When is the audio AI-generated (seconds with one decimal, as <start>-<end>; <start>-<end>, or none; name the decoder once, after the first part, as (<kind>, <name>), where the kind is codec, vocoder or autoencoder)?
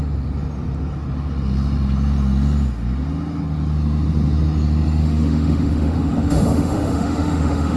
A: 5.0-7.8 (autoencoder, DAC-VAE)